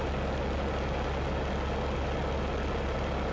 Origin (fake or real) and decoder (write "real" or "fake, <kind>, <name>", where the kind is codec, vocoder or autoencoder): real